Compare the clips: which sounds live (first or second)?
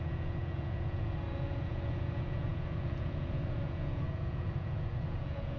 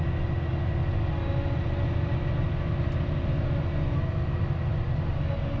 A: second